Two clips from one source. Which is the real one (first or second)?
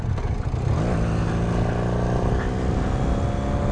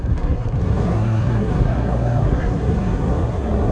first